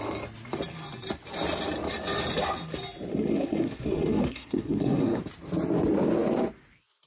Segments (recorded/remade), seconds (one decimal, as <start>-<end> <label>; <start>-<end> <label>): 0.0-3.1 recorded; 3.1-5.2 remade; 5.2-7.1 recorded